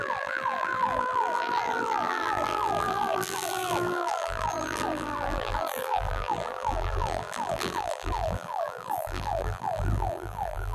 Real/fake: fake